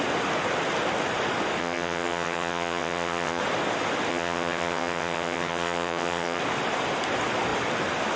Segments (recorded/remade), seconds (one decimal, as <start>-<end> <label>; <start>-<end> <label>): 0.0-1.6 recorded; 1.6-3.4 remade; 3.4-4.1 recorded; 4.1-6.4 remade; 6.4-8.2 recorded